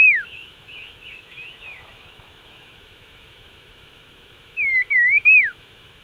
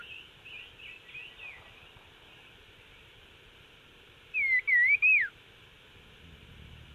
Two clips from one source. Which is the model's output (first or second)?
first